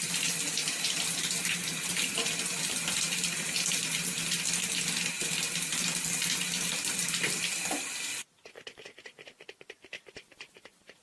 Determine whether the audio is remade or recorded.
recorded